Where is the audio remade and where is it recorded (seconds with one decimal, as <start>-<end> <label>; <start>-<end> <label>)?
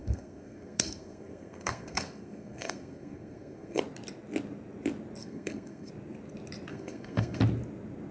0.0-3.8 remade; 3.8-5.2 recorded; 5.2-5.9 remade; 5.9-6.7 recorded; 6.7-7.4 remade; 7.4-8.1 recorded